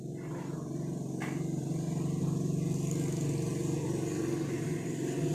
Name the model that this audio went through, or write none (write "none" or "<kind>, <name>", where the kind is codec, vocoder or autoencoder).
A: none